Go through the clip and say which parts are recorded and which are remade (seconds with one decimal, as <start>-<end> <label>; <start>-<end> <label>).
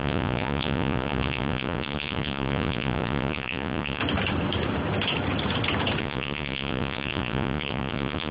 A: 0.0-4.0 remade; 4.0-6.0 recorded; 6.0-8.3 remade